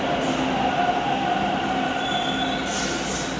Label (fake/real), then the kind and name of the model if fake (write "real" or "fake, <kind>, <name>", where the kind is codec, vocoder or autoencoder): real